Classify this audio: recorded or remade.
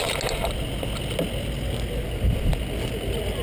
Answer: recorded